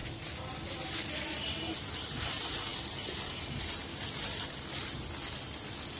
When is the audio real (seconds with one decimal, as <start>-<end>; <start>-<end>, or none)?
2.2-2.7; 5.0-6.0